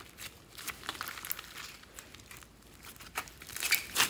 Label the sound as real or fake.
real